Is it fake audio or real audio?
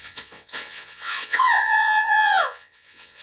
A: fake